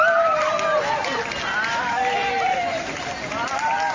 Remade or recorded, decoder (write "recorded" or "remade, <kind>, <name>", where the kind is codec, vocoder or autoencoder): recorded